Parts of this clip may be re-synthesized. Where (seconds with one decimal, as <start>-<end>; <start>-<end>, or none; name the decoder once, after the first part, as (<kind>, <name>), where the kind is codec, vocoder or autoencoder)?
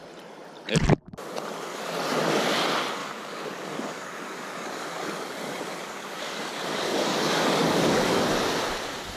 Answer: 3.0-8.2 (codec, DAC)